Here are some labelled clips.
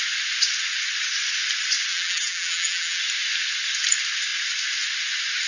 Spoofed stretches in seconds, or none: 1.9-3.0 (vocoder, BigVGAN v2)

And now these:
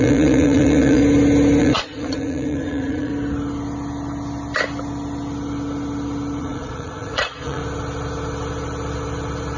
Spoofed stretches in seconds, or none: 0.0-1.0 (vocoder, Vocos); 1.6-3.1; 6.4-7.6

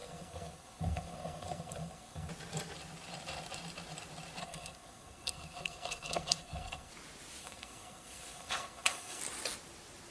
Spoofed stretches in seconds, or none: 0.0-2.3 (codec, SNAC); 4.4-6.9; 7.4-9.2